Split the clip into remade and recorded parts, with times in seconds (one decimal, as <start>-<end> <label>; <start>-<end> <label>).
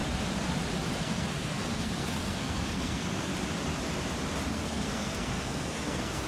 0.0-1.0 recorded; 1.0-3.3 remade; 3.3-4.5 recorded; 4.5-6.3 remade